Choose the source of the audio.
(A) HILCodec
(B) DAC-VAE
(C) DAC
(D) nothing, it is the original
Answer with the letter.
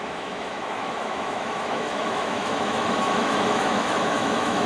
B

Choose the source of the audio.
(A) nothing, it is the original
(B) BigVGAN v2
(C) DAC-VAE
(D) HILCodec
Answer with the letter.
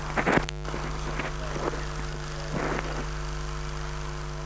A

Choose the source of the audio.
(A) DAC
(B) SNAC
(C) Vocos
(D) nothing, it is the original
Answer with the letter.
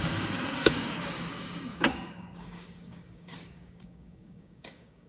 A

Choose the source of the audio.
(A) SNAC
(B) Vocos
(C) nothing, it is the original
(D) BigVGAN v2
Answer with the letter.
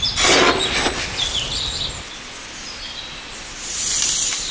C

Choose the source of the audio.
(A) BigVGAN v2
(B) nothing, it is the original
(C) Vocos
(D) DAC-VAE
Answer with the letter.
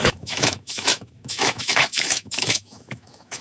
D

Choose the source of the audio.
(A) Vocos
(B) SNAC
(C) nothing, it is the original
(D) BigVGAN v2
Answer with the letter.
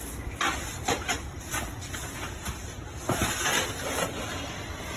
C